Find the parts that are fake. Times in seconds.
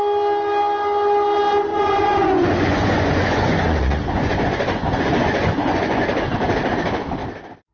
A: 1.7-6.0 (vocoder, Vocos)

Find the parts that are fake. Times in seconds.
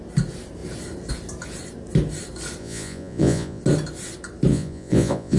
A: 2.6-3.6 (vocoder, Vocos); 4.5-5.4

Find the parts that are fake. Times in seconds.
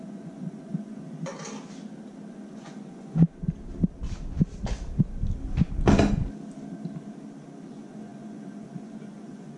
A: 0.0-1.3 (vocoder, Vocos); 2.3-3.3; 7.7-9.6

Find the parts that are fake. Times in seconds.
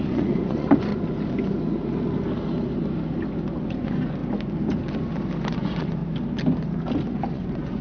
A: 0.0-0.9 (vocoder, Vocos); 3.6-4.2; 5.5-6.0; 7.1-7.8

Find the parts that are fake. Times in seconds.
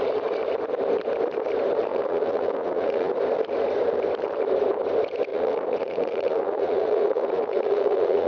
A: 1.9-3.1 (vocoder, Vocos); 5.3-8.3